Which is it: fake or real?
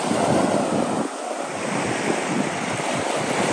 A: real